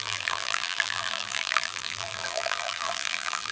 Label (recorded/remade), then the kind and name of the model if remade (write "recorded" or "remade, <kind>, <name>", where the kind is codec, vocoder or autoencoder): remade, vocoder, BigVGAN v2